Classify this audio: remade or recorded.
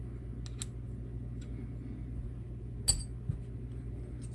recorded